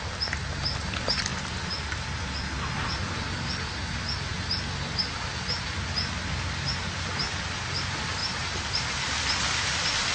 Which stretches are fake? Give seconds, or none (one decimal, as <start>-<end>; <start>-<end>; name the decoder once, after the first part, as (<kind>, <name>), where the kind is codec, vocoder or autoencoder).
8.2-8.8 (vocoder, BigVGAN v2)